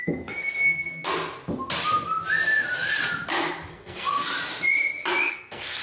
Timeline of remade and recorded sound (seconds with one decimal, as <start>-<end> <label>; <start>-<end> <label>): 0.0-1.1 remade; 1.1-3.7 recorded; 3.7-4.3 remade; 4.3-5.3 recorded; 5.3-5.8 remade